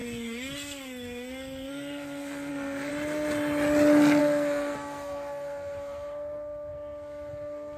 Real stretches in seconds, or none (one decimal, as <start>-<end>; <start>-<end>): 2.9-4.2